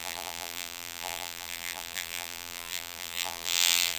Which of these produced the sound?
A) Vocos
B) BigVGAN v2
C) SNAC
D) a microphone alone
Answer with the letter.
B